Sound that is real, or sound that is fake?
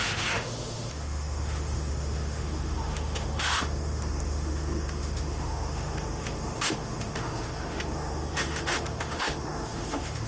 fake